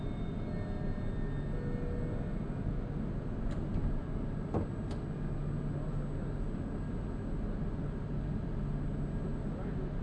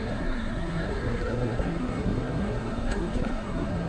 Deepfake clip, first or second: second